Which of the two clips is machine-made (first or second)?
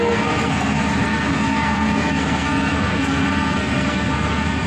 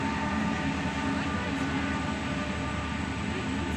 first